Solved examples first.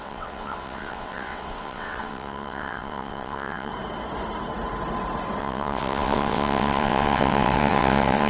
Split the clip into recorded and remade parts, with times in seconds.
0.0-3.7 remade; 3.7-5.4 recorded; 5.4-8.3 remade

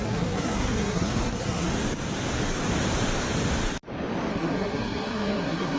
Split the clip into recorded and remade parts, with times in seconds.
0.0-1.7 remade; 1.7-4.3 recorded; 4.3-5.8 remade

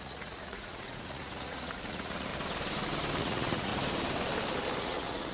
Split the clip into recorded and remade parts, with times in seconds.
0.0-2.3 remade; 2.3-3.2 recorded; 3.2-3.7 remade; 3.7-4.8 recorded; 4.8-5.3 remade

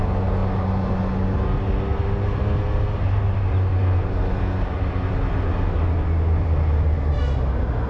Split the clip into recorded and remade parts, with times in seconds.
0.0-7.9 recorded

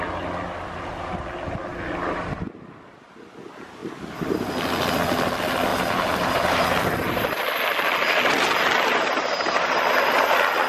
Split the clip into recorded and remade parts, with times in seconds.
0.0-5.7 recorded; 5.7-6.6 remade; 6.6-10.7 recorded

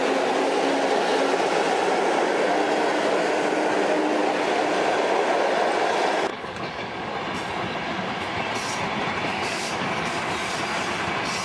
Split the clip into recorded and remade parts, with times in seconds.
0.0-6.3 recorded; 6.3-7.1 remade; 7.1-9.3 recorded; 9.3-10.3 remade; 10.3-11.4 recorded

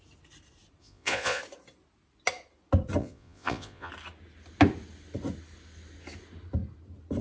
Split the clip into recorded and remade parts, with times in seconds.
0.0-0.8 recorded; 0.8-1.4 remade; 1.4-3.0 recorded; 3.0-3.9 remade; 3.9-7.2 recorded